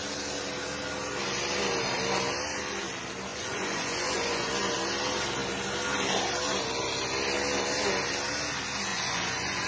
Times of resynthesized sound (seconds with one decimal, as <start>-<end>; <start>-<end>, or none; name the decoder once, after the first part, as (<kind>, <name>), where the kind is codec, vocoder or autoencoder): 3.3-4.5 (vocoder, Vocos); 8.9-9.7